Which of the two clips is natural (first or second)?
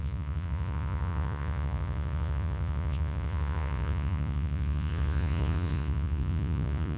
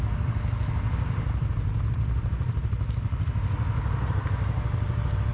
second